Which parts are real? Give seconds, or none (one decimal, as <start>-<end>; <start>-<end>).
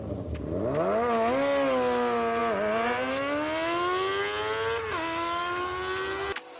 0.0-6.6